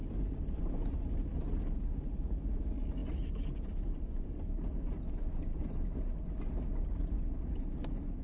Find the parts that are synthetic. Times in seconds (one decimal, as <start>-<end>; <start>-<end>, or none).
none